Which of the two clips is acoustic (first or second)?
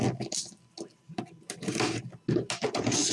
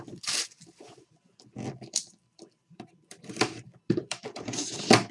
first